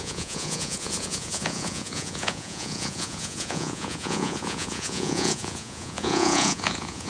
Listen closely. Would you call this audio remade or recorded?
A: remade